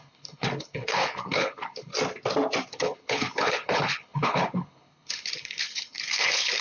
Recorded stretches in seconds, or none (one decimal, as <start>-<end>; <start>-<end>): 1.9-2.7